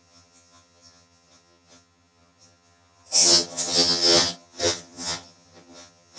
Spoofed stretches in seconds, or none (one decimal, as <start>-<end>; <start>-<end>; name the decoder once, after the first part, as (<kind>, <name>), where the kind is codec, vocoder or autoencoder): 0.0-6.2 (vocoder, HiFi-GAN)